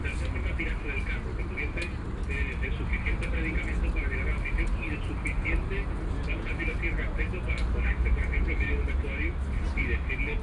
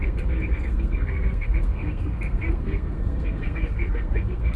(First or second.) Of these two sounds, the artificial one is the second